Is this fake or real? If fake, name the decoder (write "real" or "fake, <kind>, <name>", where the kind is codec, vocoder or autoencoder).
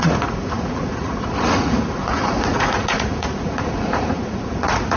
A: fake, vocoder, Vocos